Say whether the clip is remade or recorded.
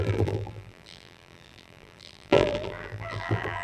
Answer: remade